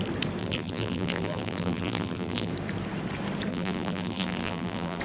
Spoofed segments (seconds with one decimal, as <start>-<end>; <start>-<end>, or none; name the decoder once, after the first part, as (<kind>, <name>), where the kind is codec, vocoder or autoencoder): 0.4-2.5 (vocoder, BigVGAN v2); 3.5-5.0